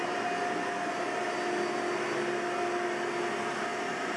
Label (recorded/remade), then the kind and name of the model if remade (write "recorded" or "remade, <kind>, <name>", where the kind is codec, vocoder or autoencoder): recorded